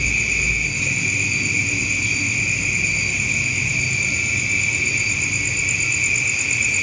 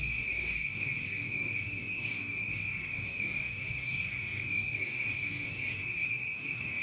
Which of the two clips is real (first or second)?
first